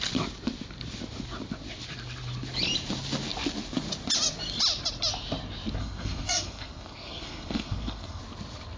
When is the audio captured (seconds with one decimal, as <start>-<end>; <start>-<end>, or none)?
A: 0.0-5.8; 8.2-8.8